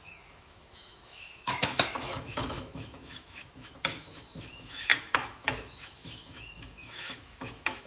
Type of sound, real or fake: fake